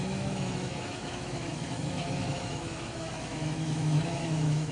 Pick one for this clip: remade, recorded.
remade